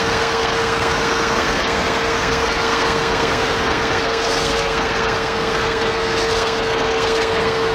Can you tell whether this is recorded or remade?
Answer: remade